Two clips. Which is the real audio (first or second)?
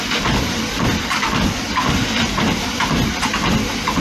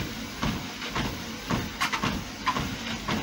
second